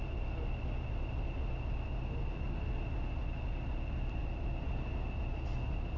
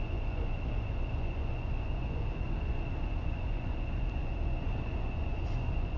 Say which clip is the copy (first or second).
second